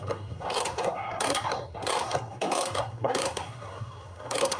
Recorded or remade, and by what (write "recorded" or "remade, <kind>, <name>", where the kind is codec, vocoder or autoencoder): remade, codec, SNAC